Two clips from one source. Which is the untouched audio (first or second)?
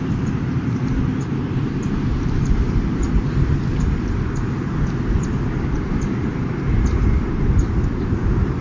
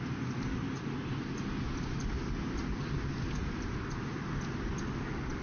second